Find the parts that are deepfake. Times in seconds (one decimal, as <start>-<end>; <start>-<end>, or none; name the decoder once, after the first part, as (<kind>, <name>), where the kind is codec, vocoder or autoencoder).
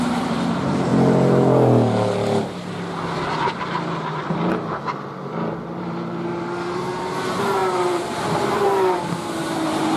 0.0-0.9 (vocoder, BigVGAN v2); 5.8-10.0